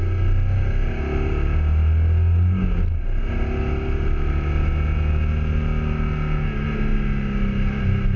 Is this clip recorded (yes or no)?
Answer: yes